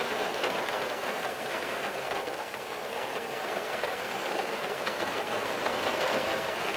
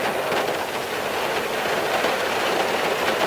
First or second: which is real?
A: second